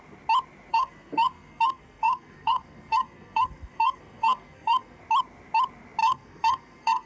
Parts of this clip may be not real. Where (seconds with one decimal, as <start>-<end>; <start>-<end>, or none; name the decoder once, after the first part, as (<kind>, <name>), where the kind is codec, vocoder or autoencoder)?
0.7-5.0 (codec, SNAC); 6.0-7.1

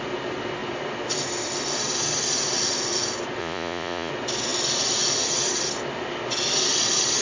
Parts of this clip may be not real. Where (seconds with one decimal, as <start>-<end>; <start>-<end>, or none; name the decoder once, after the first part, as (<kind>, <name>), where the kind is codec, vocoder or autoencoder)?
3.4-4.1 (vocoder, Vocos)

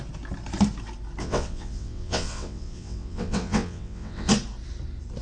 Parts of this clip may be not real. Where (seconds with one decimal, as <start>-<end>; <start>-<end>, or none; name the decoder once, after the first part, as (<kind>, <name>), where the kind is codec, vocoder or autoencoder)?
1.2-4.3 (vocoder, WaveNeXt)

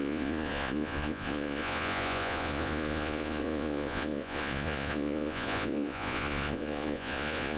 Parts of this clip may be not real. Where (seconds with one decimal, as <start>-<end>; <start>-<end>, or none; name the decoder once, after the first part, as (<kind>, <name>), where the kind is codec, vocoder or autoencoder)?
0.0-7.6 (vocoder, Vocos)

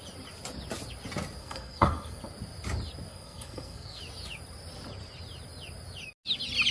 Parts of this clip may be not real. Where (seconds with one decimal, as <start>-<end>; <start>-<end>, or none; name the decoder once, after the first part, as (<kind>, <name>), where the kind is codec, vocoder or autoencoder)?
1.4-2.2 (codec, SNAC); 3.1-4.0